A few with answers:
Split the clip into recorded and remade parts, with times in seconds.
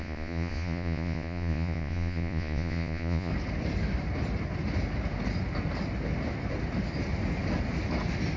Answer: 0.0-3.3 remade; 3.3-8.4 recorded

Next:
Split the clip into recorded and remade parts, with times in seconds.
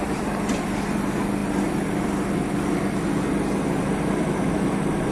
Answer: 0.0-5.1 recorded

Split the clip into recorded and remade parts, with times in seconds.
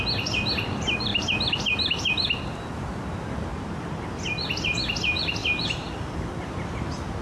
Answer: 0.0-7.2 recorded